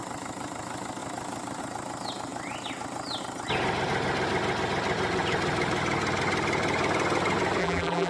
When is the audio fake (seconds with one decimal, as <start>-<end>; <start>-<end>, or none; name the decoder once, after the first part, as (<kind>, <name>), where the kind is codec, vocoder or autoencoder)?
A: 7.6-8.1 (vocoder, BigVGAN v2)